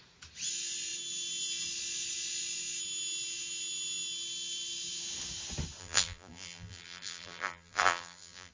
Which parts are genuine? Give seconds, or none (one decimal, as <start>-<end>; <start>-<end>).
0.0-5.8